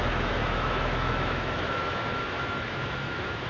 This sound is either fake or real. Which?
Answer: fake